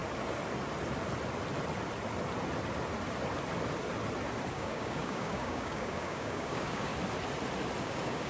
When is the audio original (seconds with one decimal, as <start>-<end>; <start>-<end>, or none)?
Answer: 0.0-4.5; 6.9-7.8